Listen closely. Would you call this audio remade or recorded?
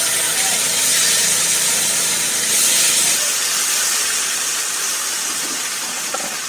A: recorded